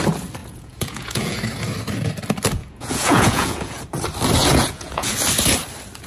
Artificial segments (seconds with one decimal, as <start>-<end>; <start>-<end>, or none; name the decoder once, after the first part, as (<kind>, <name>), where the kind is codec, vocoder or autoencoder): 0.4-1.4 (vocoder, Vocos); 2.6-3.8; 4.4-5.1